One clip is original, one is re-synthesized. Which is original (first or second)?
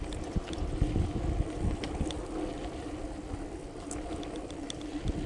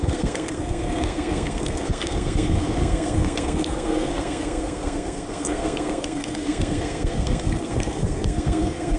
first